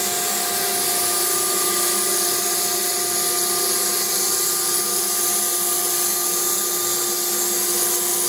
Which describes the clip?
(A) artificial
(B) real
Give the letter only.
B